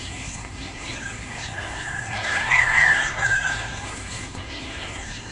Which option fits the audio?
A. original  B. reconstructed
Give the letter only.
B